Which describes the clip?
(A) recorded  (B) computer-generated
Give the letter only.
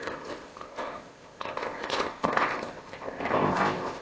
B